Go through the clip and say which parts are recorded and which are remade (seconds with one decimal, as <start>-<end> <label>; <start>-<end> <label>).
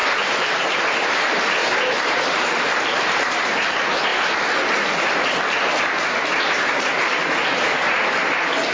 0.0-0.7 remade; 0.7-1.6 recorded; 1.6-2.6 remade; 2.6-6.9 recorded; 6.9-8.1 remade; 8.1-8.7 recorded